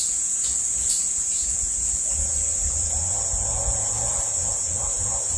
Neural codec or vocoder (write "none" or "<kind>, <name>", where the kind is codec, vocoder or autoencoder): vocoder, Vocos